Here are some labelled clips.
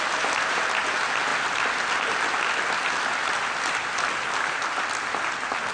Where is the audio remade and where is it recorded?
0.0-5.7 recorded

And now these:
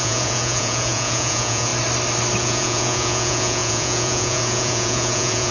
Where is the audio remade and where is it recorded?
0.0-1.7 remade; 1.7-2.4 recorded; 2.4-5.5 remade

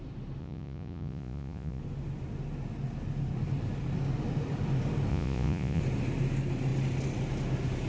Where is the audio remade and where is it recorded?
0.0-0.4 recorded; 0.4-1.8 remade; 1.8-5.1 recorded; 5.1-5.8 remade; 5.8-7.9 recorded

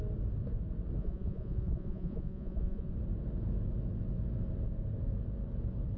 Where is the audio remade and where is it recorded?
0.0-1.0 recorded; 1.0-2.9 remade; 2.9-6.0 recorded

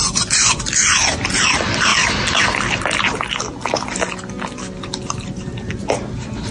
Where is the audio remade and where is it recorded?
0.0-0.6 remade; 0.6-6.5 recorded

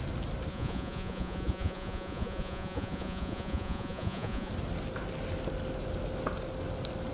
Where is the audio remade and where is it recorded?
0.0-0.5 recorded; 0.5-4.5 remade; 4.5-7.1 recorded

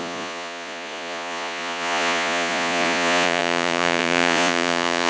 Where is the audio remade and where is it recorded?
0.0-5.1 remade